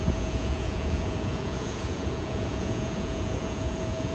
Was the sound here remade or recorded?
remade